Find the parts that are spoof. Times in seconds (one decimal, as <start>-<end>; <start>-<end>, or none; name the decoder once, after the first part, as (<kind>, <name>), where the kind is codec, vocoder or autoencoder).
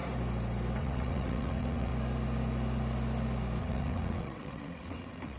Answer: 0.8-1.9 (vocoder, WaveNeXt); 3.6-5.4